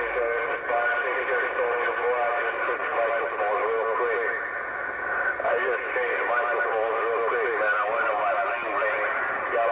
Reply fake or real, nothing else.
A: real